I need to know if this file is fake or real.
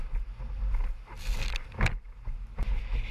real